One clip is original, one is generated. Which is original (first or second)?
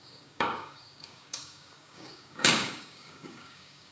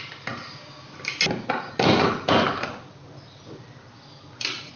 second